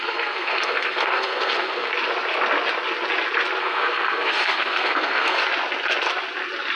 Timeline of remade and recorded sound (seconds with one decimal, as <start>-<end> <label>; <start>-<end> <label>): 0.0-1.9 remade; 1.9-3.6 recorded; 3.6-5.4 remade; 5.4-6.8 recorded